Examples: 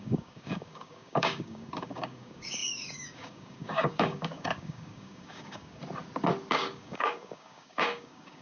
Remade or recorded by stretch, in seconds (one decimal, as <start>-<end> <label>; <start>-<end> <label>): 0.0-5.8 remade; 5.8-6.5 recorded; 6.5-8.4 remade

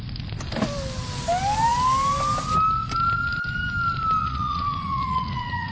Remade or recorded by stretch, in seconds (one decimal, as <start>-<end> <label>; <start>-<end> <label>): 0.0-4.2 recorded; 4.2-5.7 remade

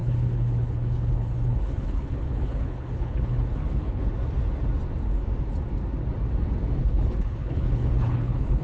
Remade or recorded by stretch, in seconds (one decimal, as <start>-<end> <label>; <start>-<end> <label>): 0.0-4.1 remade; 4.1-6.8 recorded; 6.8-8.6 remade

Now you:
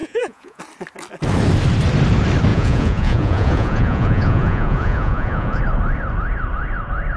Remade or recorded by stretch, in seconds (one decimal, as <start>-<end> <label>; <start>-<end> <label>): 0.0-0.6 remade; 0.6-2.5 recorded; 2.5-5.6 remade; 5.6-7.2 recorded

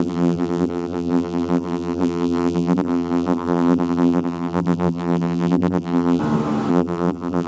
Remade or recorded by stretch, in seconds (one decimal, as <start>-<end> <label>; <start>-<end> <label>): 0.0-6.2 remade; 6.2-6.7 recorded; 6.7-7.5 remade

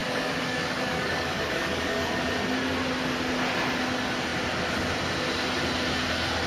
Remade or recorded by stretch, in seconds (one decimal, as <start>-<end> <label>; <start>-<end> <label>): 0.0-2.1 remade; 2.1-6.5 recorded

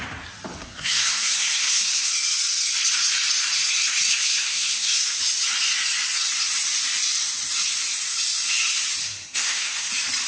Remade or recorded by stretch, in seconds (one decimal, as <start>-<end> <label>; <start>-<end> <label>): 0.0-0.6 recorded; 0.6-2.1 remade; 2.1-4.1 recorded; 4.1-5.2 remade; 5.2-9.0 recorded; 9.0-9.9 remade; 9.9-10.3 recorded